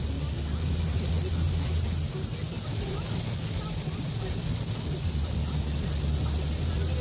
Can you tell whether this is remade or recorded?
recorded